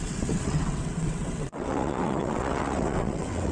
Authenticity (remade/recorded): remade